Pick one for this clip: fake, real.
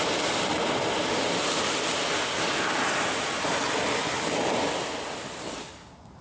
real